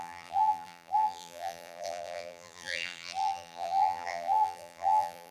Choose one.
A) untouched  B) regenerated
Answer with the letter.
B